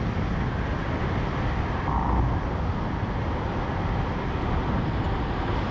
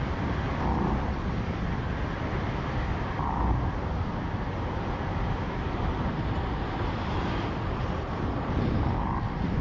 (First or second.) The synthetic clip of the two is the second